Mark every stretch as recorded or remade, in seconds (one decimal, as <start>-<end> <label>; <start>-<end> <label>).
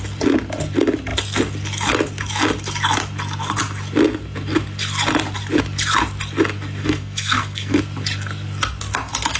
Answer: 0.0-6.8 recorded; 6.8-7.8 remade; 7.8-9.4 recorded